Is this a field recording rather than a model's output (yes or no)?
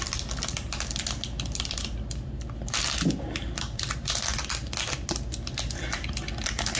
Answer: yes